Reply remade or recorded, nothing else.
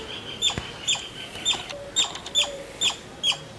recorded